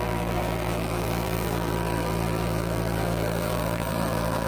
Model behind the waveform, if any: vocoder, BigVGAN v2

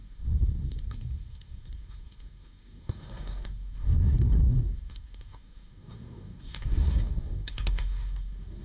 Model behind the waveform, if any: codec, SNAC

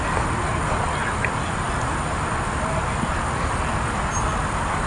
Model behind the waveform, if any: none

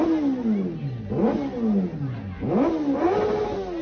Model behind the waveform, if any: none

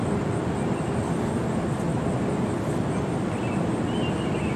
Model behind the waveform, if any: none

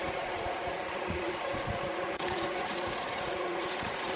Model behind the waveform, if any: vocoder, Vocos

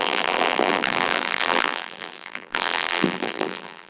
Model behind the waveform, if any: vocoder, BigVGAN v2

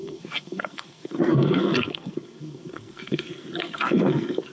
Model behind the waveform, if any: codec, SNAC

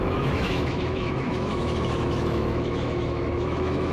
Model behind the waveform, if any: autoencoder, DAC-VAE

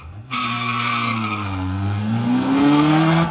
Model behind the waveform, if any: codec, SNAC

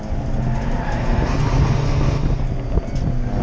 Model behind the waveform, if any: none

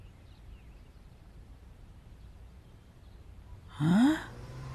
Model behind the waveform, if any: vocoder, BigVGAN v2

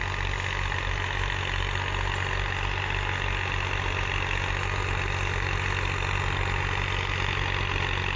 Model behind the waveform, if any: none